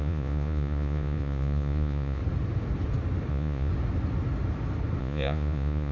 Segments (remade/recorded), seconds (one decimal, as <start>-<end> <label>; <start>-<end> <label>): 0.0-2.2 remade; 2.2-3.3 recorded; 3.3-3.7 remade; 3.7-5.0 recorded; 5.0-5.9 remade